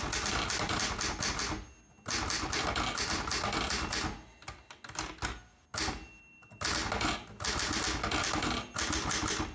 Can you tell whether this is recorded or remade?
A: recorded